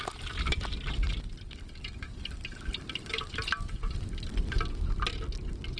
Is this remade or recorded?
recorded